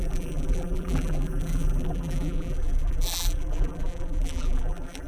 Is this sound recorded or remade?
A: remade